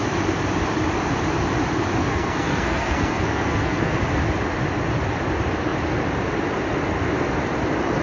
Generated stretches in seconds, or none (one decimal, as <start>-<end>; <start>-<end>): 2.0-4.0